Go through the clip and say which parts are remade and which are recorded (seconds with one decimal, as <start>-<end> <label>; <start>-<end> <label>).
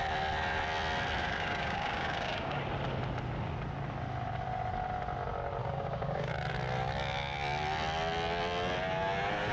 0.0-1.2 recorded; 1.2-2.6 remade; 2.6-5.6 recorded; 5.6-6.3 remade; 6.3-9.5 recorded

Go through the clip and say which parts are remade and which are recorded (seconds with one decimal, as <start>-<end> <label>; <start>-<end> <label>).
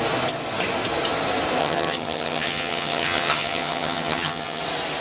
0.0-1.6 recorded; 1.6-4.6 remade; 4.6-5.0 recorded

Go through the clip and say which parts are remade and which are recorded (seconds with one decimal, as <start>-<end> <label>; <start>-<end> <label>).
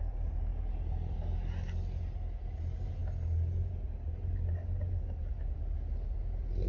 0.0-6.7 recorded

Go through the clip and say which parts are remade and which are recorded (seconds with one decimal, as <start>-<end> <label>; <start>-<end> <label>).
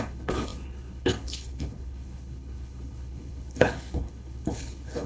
0.0-5.1 remade